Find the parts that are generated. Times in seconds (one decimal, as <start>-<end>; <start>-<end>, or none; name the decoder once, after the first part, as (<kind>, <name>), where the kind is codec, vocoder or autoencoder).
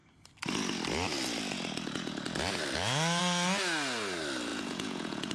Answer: 4.5-5.3 (vocoder, Vocos)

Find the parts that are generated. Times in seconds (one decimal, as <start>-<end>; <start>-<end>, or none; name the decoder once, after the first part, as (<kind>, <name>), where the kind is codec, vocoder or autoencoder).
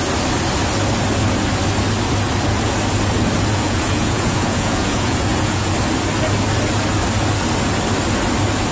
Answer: 3.5-5.7 (vocoder, Vocos)